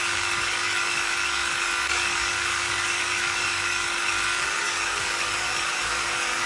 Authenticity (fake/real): fake